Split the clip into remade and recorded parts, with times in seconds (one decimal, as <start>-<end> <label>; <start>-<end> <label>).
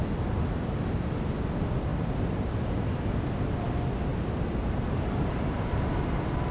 0.0-1.9 recorded; 1.9-2.9 remade; 2.9-4.1 recorded; 4.1-6.0 remade; 6.0-6.5 recorded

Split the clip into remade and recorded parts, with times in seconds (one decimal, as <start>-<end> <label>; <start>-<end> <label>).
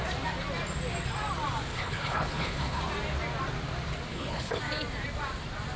0.0-1.7 recorded; 1.7-2.8 remade; 2.8-4.1 recorded; 4.1-4.6 remade; 4.6-5.8 recorded